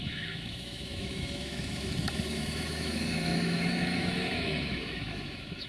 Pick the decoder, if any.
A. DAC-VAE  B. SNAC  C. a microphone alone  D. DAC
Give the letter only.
A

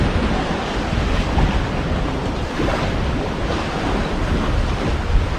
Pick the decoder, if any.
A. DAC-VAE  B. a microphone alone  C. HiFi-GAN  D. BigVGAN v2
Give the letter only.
B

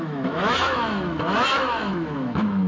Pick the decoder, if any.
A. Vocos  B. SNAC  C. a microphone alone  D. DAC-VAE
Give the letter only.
D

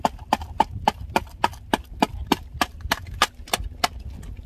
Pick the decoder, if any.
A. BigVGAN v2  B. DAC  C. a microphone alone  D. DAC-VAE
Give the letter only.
C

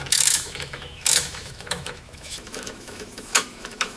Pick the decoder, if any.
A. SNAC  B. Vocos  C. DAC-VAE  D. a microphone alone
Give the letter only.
C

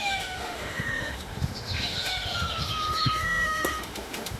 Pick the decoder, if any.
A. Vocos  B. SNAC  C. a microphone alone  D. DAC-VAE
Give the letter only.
D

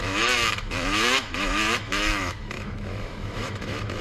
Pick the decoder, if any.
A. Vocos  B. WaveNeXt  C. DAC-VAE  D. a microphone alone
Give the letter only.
C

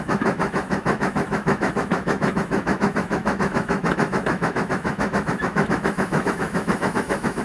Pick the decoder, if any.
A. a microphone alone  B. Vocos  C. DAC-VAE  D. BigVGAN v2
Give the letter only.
C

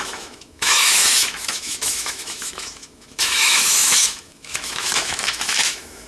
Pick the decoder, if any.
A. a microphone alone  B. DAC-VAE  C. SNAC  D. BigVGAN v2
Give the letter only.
B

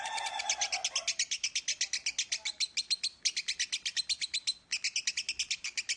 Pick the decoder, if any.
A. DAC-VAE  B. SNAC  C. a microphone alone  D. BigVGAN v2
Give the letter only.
C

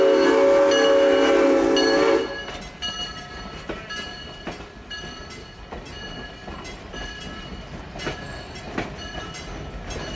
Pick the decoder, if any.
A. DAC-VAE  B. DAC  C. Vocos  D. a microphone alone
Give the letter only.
D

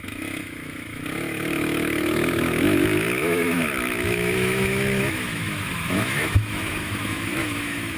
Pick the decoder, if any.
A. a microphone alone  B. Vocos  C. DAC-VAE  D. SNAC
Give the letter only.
C